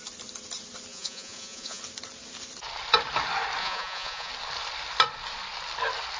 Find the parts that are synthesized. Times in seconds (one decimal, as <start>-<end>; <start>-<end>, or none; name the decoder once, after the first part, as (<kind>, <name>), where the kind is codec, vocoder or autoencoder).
0.9-1.8 (vocoder, Vocos); 3.6-4.3